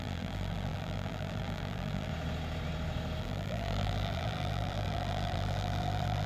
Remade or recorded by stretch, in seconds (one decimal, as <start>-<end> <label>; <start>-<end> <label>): 0.0-2.1 remade; 2.1-3.2 recorded; 3.2-6.3 remade